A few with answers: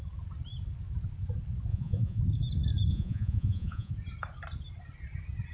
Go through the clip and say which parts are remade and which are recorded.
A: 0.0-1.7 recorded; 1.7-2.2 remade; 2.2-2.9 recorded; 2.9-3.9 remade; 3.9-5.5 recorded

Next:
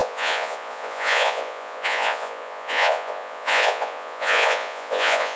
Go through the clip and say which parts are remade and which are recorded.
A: 0.0-5.4 remade